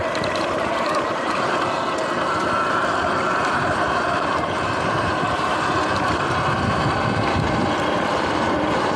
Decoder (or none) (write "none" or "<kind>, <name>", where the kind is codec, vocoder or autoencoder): none